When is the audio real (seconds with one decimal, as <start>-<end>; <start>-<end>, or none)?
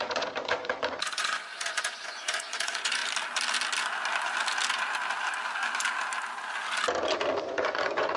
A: 3.0-7.4